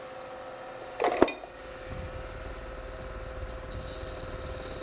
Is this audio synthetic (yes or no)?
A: no